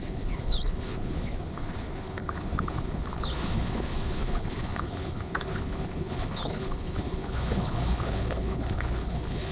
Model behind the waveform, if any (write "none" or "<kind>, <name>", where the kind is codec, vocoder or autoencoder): codec, HILCodec